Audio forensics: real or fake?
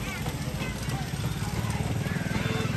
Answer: real